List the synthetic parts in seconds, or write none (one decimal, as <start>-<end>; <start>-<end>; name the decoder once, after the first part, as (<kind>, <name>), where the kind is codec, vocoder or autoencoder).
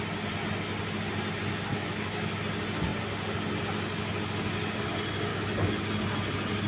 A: 1.7-2.3 (autoencoder, DAC-VAE); 5.3-5.8